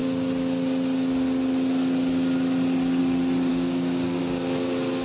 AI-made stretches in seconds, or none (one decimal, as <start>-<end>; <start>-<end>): 3.5-4.2